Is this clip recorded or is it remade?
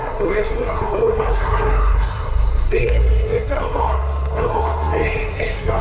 remade